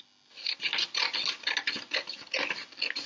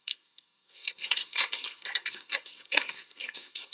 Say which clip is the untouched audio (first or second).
first